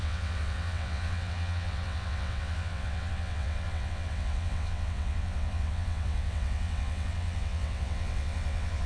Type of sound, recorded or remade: remade